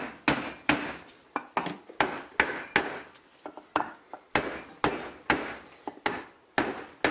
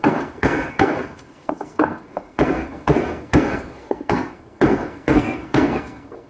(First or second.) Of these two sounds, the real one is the first